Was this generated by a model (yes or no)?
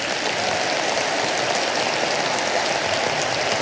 no